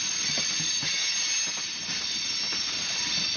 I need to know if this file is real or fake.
real